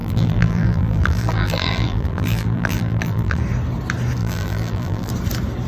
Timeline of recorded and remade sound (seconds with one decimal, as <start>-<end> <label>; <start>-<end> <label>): 0.0-3.4 remade; 3.4-4.2 recorded; 4.2-5.1 remade; 5.1-5.7 recorded